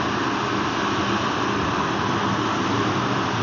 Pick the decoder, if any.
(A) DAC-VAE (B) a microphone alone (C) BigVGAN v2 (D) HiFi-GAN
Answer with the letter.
B